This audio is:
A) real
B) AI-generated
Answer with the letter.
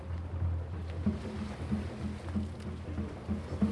A